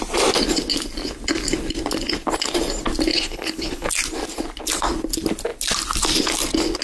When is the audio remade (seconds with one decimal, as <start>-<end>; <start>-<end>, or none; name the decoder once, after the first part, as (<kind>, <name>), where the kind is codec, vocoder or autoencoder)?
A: 3.1-3.9 (codec, HILCodec)